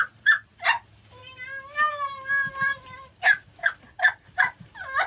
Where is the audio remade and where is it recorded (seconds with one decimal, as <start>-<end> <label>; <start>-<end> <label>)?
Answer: 0.0-1.2 remade; 1.2-1.9 recorded; 1.9-2.7 remade; 2.7-4.1 recorded; 4.1-5.1 remade